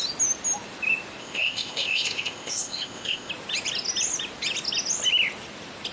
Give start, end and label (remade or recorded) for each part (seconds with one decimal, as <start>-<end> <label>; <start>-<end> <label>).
0.0-1.2 recorded; 1.2-3.3 remade; 3.3-5.9 recorded

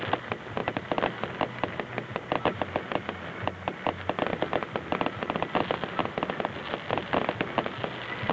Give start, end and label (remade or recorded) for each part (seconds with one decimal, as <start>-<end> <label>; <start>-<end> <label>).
0.0-8.3 recorded

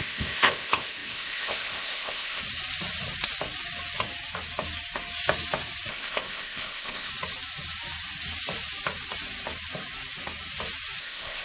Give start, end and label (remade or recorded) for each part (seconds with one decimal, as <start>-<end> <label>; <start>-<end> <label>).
0.0-2.4 remade; 2.4-5.9 recorded; 5.9-7.1 remade; 7.1-11.0 recorded; 11.0-11.4 remade